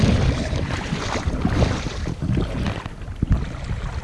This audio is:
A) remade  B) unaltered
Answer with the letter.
B